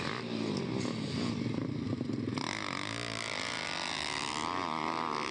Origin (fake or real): real